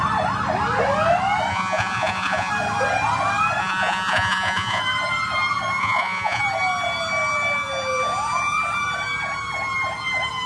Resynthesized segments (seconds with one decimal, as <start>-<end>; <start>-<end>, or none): 1.5-2.5; 3.6-4.8; 5.8-6.4

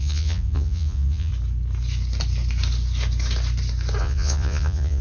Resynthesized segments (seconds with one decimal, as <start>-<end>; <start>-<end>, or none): 0.0-1.3; 4.0-5.0

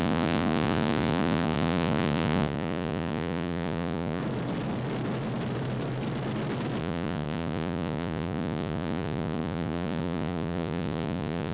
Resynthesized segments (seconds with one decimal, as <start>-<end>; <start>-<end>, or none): 0.0-4.2; 6.8-11.5

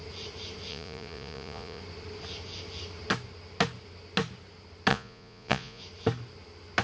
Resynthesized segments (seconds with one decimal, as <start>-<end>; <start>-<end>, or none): 0.7-1.8; 4.9-5.8